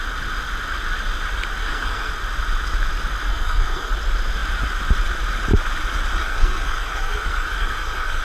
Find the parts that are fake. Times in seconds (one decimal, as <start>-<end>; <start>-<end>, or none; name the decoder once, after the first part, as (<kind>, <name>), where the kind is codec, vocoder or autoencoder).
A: 1.6-2.1 (codec, SNAC); 3.3-3.9; 6.2-8.2